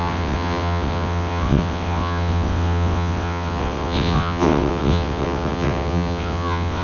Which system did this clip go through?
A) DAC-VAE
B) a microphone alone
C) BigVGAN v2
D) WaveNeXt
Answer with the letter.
D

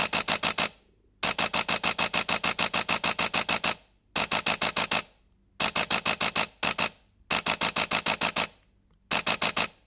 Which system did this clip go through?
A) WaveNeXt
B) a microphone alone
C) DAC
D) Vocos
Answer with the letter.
B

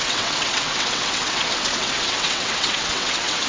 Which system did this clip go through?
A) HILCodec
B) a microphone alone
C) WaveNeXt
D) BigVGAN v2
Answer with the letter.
C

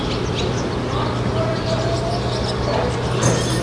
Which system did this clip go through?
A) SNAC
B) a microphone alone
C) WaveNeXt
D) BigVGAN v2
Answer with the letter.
B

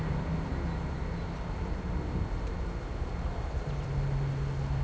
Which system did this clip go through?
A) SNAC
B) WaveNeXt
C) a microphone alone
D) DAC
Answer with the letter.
C